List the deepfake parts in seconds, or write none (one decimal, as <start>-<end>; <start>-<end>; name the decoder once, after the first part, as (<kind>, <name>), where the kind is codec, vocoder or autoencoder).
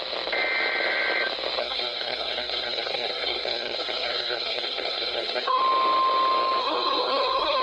1.6-5.6 (codec, SNAC); 6.6-7.6